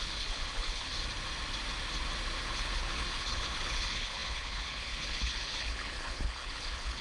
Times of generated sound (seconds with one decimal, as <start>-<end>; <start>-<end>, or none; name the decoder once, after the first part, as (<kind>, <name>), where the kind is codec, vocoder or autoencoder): 0.0-0.9 (codec, HILCodec); 2.4-7.0